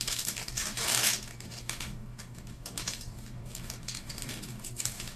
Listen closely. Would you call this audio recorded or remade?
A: remade